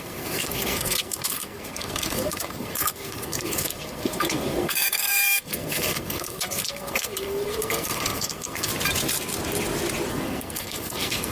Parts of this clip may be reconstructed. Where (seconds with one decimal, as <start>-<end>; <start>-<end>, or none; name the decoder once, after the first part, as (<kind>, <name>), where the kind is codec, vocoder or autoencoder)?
0.0-8.7 (codec, SNAC); 10.1-11.3